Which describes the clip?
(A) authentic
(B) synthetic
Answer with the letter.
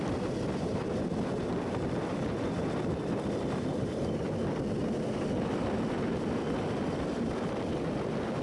B